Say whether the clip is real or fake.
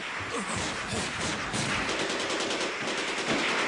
real